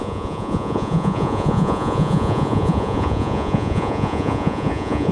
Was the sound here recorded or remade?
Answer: remade